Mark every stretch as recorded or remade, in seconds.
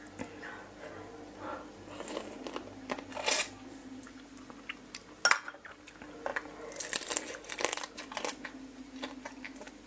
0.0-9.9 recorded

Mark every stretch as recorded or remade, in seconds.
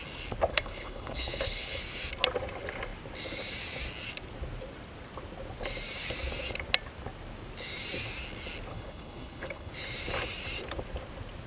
0.0-0.5 recorded; 0.5-1.8 remade; 1.8-8.7 recorded; 8.7-9.7 remade; 9.7-11.5 recorded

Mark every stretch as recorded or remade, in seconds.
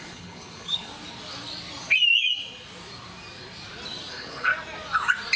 0.0-0.9 remade; 0.9-4.1 recorded; 4.1-4.5 remade; 4.5-5.4 recorded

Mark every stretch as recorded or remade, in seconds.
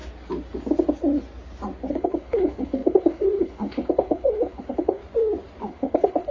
0.0-1.9 recorded; 1.9-5.0 remade; 5.0-5.6 recorded; 5.6-6.3 remade